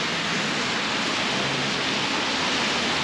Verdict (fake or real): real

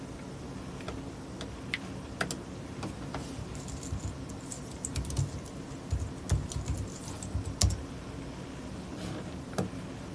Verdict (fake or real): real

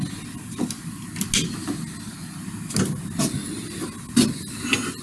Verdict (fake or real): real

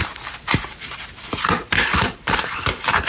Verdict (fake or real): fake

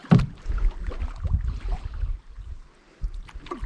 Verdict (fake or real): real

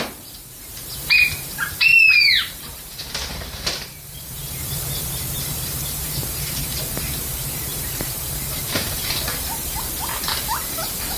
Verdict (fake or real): fake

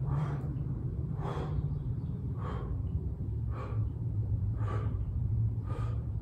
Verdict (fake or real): fake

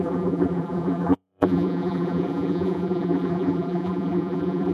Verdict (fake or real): fake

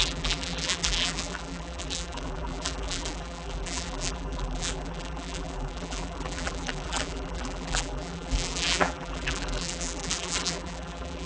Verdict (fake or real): fake